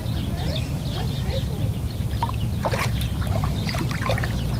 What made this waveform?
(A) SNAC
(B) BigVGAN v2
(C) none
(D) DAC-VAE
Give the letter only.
C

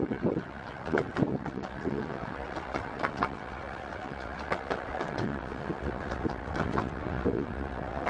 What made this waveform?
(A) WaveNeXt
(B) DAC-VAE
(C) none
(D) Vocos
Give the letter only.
A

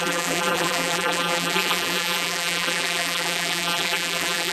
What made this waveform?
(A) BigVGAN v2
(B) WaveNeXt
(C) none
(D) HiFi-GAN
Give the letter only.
A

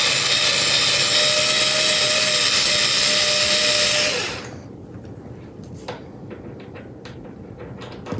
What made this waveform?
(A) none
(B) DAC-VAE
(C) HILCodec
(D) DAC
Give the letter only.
A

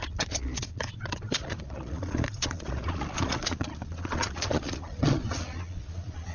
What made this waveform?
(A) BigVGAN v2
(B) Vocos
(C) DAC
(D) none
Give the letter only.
B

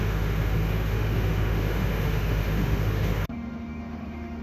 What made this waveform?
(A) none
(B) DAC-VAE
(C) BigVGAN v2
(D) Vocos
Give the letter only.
B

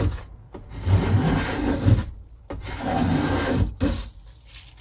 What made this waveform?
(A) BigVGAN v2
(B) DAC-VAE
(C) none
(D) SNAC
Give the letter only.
C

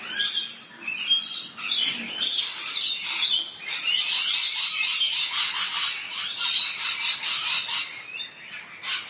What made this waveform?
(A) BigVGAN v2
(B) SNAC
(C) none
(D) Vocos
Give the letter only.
C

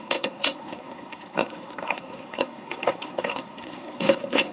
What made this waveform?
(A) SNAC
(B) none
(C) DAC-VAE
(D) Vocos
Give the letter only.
A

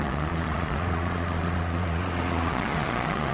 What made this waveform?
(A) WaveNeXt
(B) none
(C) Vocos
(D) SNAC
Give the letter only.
C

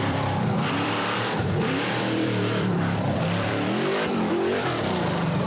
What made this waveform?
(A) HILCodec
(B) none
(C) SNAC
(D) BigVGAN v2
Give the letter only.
D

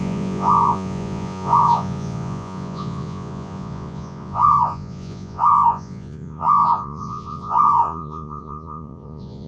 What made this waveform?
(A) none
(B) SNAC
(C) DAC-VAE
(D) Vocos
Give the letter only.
D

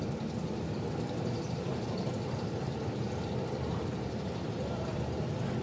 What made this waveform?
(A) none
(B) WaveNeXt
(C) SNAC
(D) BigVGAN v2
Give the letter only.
D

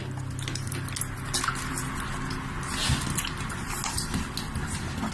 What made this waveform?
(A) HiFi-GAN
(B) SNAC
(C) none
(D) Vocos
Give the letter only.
C